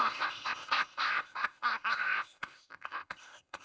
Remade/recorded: remade